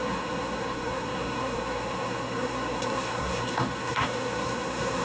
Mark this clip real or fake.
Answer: fake